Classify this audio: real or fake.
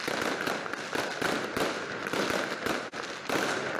real